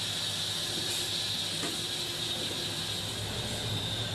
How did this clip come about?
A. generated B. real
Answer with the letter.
B